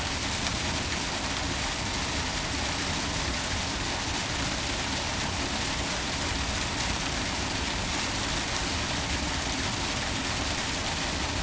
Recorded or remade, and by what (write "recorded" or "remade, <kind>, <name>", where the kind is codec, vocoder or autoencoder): recorded